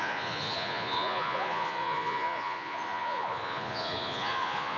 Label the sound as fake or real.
fake